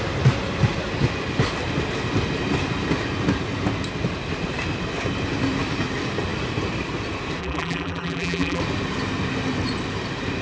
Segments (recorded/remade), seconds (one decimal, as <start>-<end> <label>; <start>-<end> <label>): 0.0-7.4 recorded; 7.4-8.6 remade; 8.6-10.4 recorded